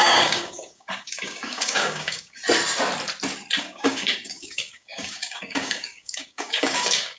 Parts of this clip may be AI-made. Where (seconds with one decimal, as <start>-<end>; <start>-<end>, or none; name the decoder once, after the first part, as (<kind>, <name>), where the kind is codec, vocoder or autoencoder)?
0.0-2.4 (codec, DAC); 3.6-7.2